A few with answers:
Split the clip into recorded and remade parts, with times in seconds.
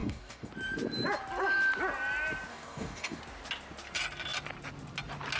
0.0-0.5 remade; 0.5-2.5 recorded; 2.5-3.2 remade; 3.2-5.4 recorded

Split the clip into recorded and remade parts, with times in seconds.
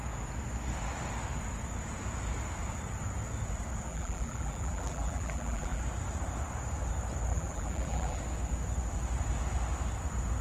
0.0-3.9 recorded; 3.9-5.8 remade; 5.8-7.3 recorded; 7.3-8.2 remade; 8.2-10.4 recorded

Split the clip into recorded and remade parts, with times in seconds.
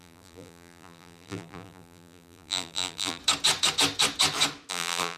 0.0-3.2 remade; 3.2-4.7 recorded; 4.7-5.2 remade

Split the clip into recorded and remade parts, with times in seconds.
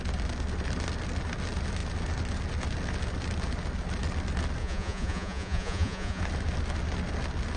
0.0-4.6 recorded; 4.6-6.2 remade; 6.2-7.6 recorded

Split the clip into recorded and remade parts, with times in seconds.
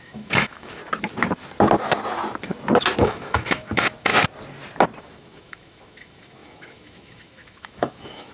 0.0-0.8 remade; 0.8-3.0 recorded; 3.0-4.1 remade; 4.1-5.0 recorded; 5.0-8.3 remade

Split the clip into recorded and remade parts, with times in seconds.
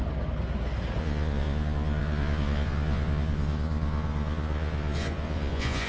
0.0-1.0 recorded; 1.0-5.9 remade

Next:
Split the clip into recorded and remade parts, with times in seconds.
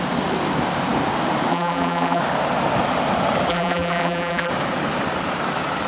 0.0-1.5 recorded; 1.5-2.2 remade; 2.2-3.5 recorded; 3.5-4.5 remade; 4.5-5.9 recorded